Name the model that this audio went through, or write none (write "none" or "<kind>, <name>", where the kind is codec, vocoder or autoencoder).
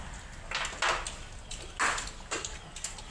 none